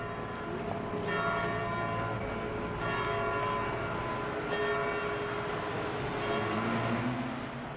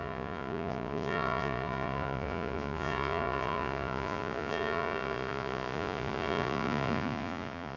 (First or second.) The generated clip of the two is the second